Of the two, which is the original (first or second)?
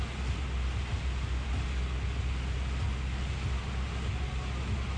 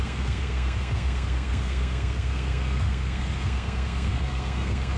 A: first